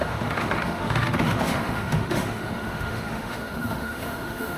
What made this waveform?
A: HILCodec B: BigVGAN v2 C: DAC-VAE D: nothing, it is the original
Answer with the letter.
C